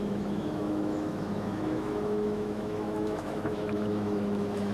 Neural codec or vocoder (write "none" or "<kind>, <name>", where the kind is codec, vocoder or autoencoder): autoencoder, DAC-VAE